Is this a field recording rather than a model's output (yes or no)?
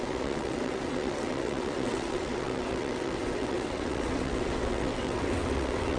no